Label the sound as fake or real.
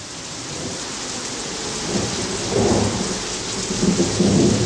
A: real